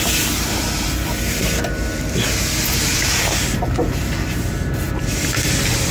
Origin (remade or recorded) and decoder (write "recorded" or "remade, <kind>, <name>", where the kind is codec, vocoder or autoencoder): remade, vocoder, BigVGAN v2